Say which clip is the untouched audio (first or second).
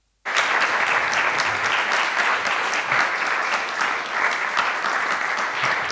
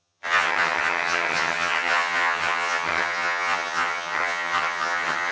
first